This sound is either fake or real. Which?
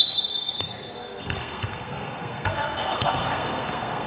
fake